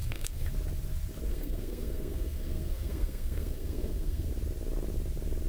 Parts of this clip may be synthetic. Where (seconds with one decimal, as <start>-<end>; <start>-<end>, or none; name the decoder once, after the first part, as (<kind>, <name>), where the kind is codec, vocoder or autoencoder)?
0.0-0.5 (codec, SNAC); 1.3-4.3